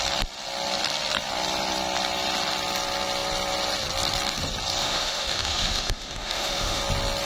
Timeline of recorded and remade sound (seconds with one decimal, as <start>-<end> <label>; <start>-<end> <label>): 0.0-4.8 recorded; 4.8-6.8 remade; 6.8-7.3 recorded